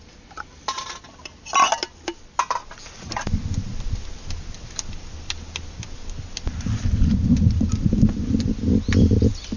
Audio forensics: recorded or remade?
recorded